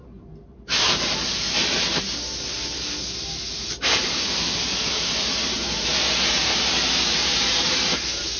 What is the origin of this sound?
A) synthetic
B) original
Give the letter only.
A